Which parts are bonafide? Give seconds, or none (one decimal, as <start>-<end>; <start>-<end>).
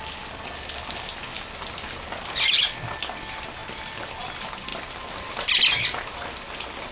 0.0-6.9